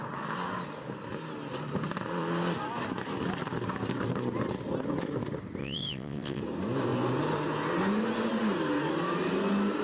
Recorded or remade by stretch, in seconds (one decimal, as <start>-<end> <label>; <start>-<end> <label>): 0.0-5.6 recorded; 5.6-6.4 remade; 6.4-9.8 recorded